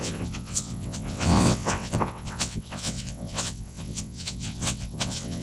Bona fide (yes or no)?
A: no